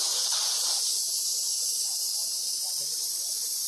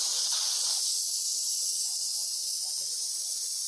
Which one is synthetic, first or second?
first